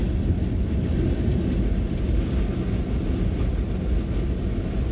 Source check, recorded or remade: recorded